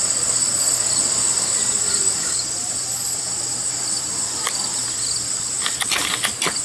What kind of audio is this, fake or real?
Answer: real